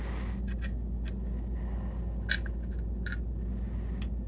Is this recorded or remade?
recorded